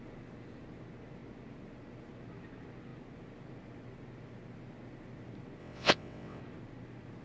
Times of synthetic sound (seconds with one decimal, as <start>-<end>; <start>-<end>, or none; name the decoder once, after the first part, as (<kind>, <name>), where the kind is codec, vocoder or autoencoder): 5.6-6.4 (vocoder, WaveNeXt)